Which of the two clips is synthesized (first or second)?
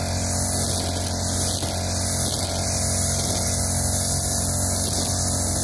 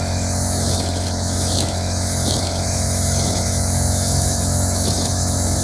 second